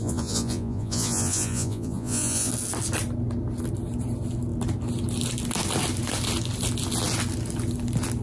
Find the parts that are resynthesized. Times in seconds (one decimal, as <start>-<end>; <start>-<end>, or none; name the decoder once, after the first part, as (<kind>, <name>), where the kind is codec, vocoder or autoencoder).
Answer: 0.0-2.5 (vocoder, Vocos)